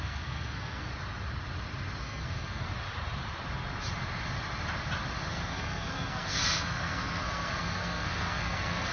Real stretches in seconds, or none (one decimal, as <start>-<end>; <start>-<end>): 0.9-2.0; 2.7-5.3